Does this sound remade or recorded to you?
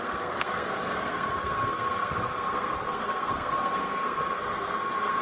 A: remade